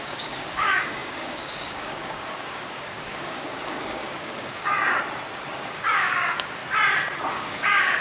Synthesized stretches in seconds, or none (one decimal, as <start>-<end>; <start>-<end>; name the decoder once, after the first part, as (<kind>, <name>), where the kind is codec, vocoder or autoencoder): 0.0-4.7 (codec, DAC); 5.6-6.6; 7.3-8.0